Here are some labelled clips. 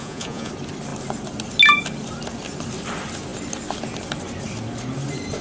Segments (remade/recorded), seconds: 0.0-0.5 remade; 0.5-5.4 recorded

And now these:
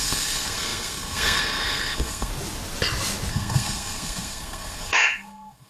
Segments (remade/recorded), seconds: 0.0-2.3 remade; 2.3-3.3 recorded; 3.3-5.7 remade

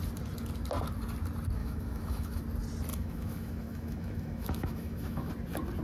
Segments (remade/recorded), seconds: 0.0-1.6 recorded; 1.6-2.4 remade; 2.4-2.9 recorded; 2.9-5.3 remade; 5.3-5.8 recorded

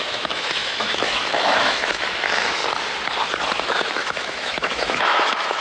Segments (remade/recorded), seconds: 0.0-2.6 remade; 2.6-3.6 recorded; 3.6-5.6 remade

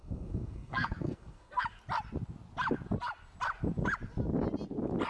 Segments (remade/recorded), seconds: 0.0-1.6 remade; 1.6-5.1 recorded

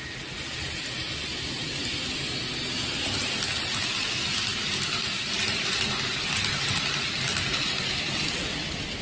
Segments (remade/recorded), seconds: 0.0-9.0 recorded